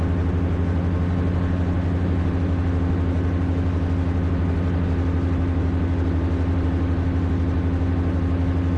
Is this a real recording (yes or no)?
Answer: yes